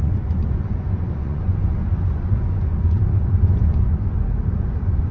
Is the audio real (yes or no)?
no